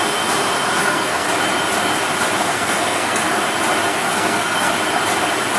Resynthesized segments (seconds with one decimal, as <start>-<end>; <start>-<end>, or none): 0.8-1.3; 2.4-3.4; 3.9-4.7